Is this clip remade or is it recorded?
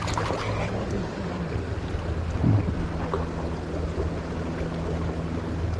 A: recorded